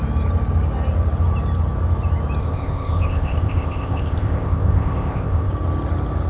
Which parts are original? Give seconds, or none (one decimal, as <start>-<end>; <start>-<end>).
0.0-2.4; 5.5-6.3